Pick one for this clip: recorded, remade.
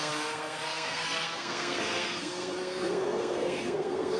remade